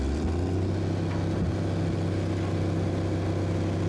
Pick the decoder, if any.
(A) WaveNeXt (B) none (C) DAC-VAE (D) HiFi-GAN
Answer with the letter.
B